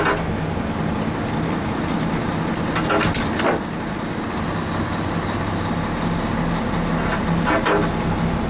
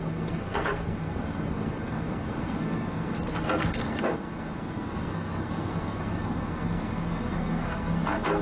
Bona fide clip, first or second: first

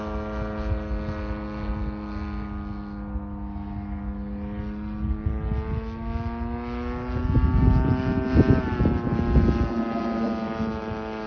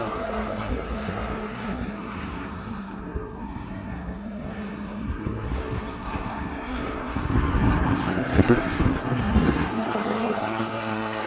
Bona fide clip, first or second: first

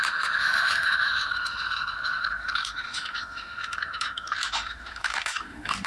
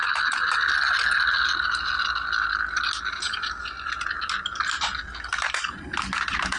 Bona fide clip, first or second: second